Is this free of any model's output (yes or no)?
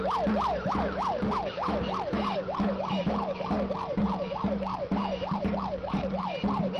no